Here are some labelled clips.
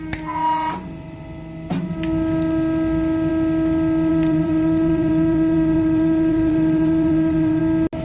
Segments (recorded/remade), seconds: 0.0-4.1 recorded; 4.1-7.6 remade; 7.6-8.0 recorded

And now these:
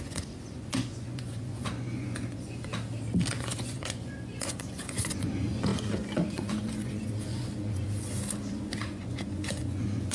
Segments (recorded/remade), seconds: 0.0-2.7 remade; 2.7-3.3 recorded; 3.3-10.1 remade

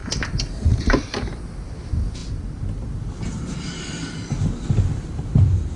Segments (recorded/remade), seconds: 0.0-5.8 recorded

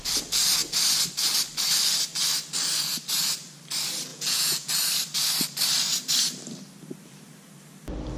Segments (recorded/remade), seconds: 0.0-4.1 recorded; 4.1-4.7 remade; 4.7-8.2 recorded